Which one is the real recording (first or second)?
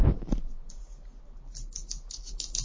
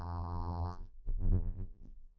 first